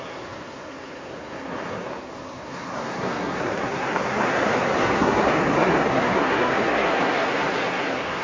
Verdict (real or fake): fake